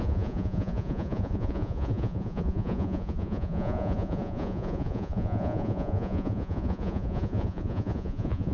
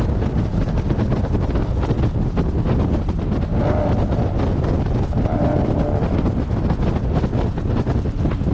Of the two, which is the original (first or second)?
second